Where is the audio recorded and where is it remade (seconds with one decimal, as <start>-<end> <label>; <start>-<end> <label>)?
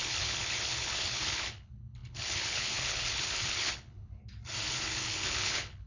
0.0-4.2 remade; 4.2-4.7 recorded; 4.7-5.9 remade